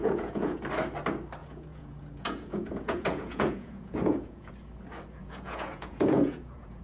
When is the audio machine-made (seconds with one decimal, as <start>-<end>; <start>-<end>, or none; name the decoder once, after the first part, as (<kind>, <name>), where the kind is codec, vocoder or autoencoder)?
0.0-0.6 (vocoder, Vocos); 1.4-4.5; 5.2-6.8

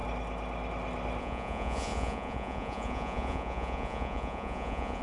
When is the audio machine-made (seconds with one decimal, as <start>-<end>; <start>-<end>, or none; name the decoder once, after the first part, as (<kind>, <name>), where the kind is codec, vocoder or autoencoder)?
1.2-5.0 (vocoder, Vocos)

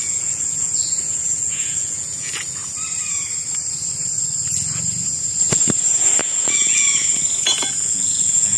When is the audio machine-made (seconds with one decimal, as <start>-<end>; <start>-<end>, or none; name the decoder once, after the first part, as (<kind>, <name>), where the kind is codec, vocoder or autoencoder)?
0.0-2.6 (vocoder, Vocos); 6.2-8.6

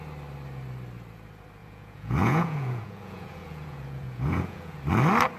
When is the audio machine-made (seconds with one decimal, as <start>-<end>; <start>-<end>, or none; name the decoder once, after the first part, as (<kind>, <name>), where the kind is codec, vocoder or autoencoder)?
1.6-4.8 (vocoder, Vocos)

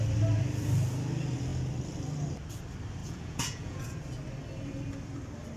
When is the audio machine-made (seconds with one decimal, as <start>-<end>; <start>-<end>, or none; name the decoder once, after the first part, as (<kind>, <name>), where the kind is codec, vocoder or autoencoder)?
3.0-3.9 (vocoder, Vocos)